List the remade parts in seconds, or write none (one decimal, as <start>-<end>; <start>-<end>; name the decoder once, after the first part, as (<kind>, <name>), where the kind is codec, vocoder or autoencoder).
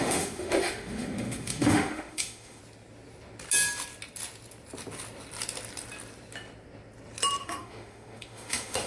0.0-2.6 (autoencoder, DAC-VAE); 7.4-8.9